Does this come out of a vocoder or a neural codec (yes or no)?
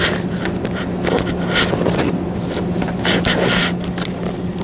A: no